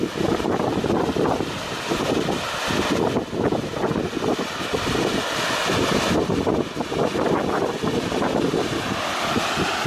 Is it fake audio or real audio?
real